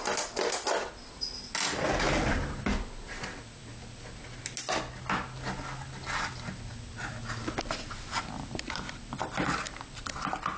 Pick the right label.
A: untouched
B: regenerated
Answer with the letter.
A